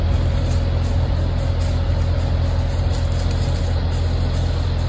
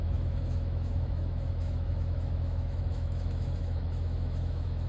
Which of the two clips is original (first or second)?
first